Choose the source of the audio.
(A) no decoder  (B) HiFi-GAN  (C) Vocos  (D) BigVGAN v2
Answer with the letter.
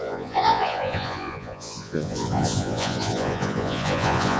C